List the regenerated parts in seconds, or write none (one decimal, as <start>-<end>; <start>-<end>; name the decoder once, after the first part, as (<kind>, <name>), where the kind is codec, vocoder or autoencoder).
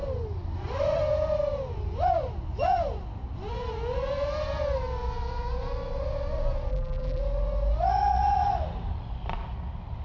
6.7-7.2 (vocoder, BigVGAN v2)